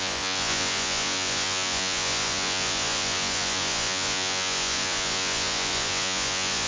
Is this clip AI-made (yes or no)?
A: yes